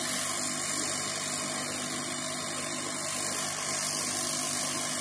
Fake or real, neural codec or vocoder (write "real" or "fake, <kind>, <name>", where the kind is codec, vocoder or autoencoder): real